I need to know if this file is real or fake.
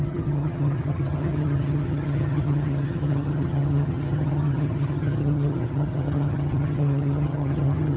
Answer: fake